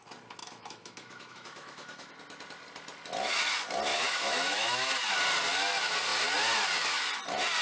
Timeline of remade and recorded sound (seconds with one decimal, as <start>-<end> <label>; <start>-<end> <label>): 0.0-0.4 recorded; 0.4-2.1 remade; 2.1-3.9 recorded; 3.9-4.9 remade; 4.9-7.6 recorded